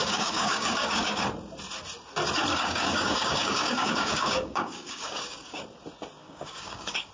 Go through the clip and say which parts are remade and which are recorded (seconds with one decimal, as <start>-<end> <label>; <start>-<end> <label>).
0.0-1.2 remade; 1.2-2.5 recorded; 2.5-5.6 remade; 5.6-6.2 recorded; 6.2-7.1 remade